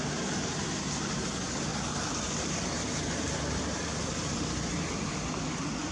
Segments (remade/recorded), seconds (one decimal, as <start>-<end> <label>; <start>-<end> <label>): 0.0-5.9 recorded